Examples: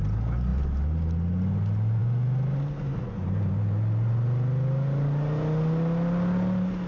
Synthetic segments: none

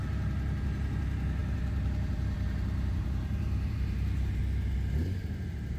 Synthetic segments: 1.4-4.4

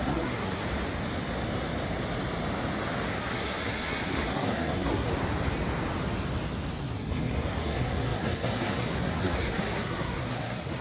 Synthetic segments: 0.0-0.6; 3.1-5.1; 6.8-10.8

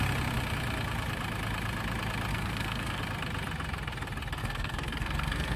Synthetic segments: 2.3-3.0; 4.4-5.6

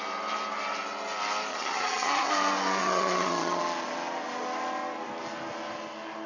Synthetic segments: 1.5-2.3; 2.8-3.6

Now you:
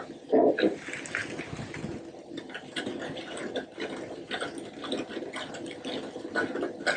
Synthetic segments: none

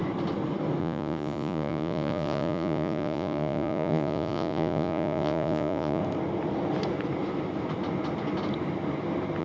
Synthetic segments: 0.8-6.0

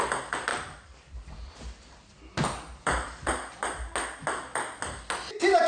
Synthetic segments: 0.5-1.5; 2.7-3.5